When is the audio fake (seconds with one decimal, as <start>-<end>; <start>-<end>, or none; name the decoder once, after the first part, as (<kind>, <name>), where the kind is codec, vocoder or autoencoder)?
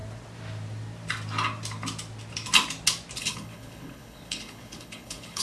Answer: 3.2-5.4 (codec, HILCodec)